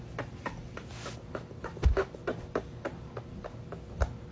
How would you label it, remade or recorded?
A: recorded